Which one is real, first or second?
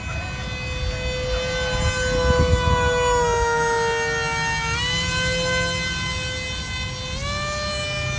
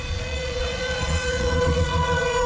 first